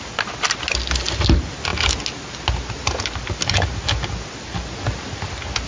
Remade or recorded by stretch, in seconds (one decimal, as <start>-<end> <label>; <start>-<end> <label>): 0.0-5.7 recorded